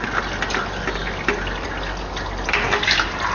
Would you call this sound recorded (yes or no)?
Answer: yes